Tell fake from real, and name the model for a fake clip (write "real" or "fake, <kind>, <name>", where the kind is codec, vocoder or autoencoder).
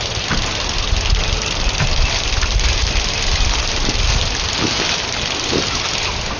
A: real